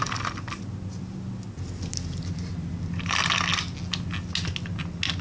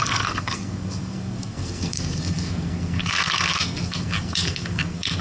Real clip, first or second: first